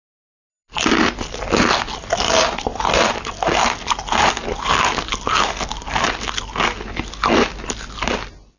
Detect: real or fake real